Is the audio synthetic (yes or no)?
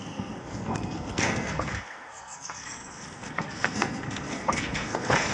yes